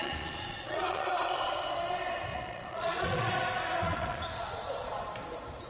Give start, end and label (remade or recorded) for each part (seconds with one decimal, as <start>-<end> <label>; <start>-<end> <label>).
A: 0.0-1.6 remade; 1.6-2.3 recorded; 2.3-3.3 remade; 3.3-3.8 recorded; 3.8-5.0 remade; 5.0-5.7 recorded